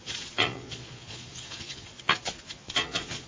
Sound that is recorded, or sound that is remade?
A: remade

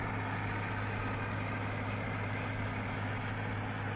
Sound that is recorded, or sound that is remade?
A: recorded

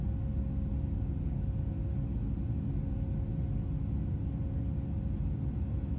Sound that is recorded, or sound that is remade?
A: recorded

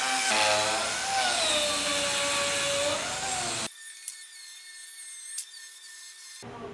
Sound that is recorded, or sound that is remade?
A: recorded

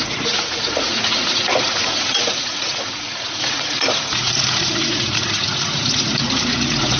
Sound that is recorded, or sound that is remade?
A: remade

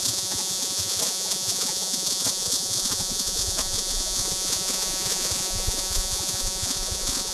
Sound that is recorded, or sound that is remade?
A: remade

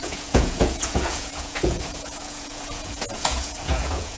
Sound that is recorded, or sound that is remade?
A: remade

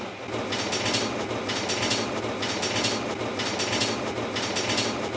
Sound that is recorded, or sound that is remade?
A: recorded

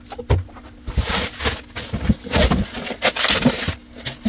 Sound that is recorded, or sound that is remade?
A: recorded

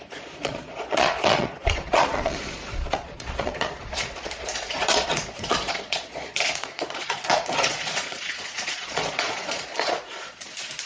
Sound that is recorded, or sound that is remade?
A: remade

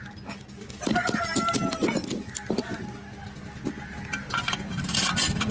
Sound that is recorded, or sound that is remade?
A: recorded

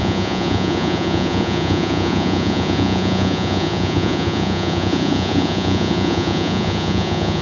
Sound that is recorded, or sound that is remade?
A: remade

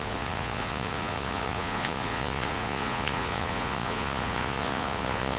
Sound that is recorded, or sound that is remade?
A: remade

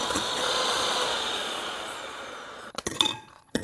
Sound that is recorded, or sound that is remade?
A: remade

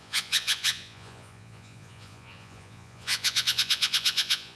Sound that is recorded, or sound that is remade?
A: remade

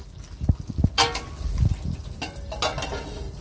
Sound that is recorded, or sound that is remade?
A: recorded